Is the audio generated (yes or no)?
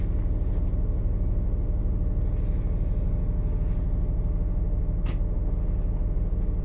no